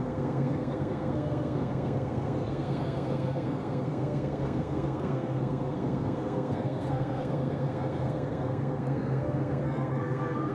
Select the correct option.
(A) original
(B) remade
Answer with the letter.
B